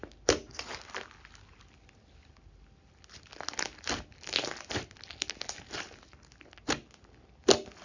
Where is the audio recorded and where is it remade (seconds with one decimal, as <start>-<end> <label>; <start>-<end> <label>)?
0.0-7.8 recorded